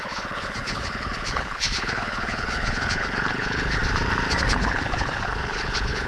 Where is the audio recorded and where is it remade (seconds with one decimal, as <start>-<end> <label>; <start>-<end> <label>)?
0.0-3.8 remade; 3.8-4.5 recorded; 4.5-6.1 remade